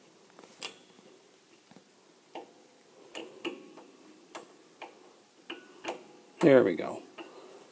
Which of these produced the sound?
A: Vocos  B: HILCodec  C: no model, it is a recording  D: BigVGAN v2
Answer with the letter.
C